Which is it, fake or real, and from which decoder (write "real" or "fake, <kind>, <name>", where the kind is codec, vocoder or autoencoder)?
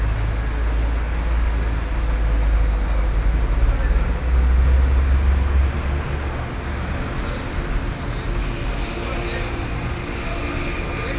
real